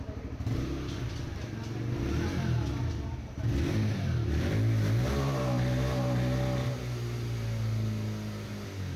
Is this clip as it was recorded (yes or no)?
yes